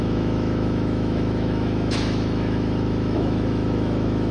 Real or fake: fake